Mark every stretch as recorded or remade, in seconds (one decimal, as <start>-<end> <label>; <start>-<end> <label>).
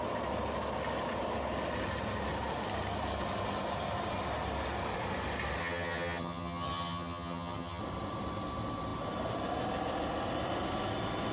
0.0-5.6 recorded; 5.6-7.8 remade; 7.8-11.3 recorded